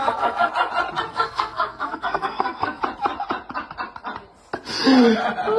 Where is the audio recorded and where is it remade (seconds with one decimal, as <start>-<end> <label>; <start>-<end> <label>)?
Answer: 0.0-0.5 remade; 0.5-1.1 recorded; 1.1-2.8 remade; 2.8-5.6 recorded